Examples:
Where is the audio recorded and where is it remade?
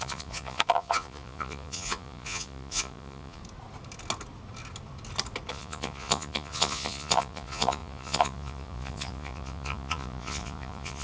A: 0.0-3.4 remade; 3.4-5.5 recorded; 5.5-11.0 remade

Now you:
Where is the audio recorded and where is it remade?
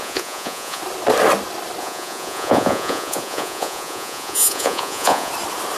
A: 0.0-0.8 remade; 0.8-1.8 recorded; 1.8-5.3 remade; 5.3-5.8 recorded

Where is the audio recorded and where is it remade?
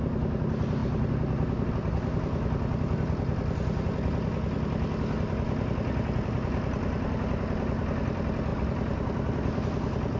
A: 0.0-10.2 recorded